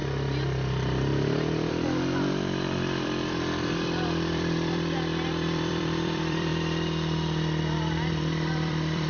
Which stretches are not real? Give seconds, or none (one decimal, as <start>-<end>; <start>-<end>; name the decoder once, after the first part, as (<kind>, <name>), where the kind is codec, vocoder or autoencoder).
1.7-6.5 (vocoder, BigVGAN v2); 7.6-9.1